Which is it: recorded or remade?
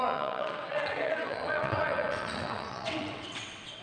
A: remade